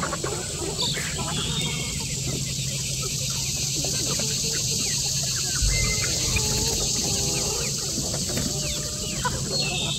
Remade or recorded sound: recorded